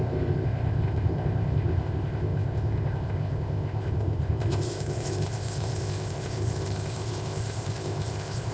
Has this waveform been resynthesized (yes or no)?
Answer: yes